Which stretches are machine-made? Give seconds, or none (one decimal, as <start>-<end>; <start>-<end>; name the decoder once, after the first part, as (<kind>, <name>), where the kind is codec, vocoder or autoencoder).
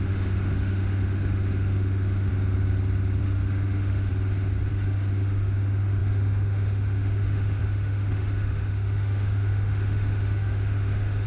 0.0-2.3 (autoencoder, DAC-VAE); 3.2-4.1; 4.7-11.3